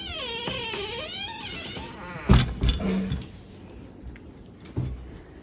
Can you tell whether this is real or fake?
real